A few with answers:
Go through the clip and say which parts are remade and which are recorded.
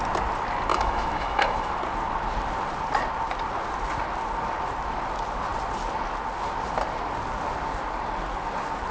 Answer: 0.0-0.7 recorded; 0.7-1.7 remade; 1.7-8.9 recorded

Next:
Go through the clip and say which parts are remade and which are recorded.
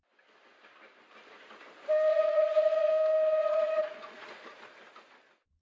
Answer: 0.0-2.1 recorded; 2.1-2.9 remade; 2.9-3.4 recorded; 3.4-4.3 remade; 4.3-5.6 recorded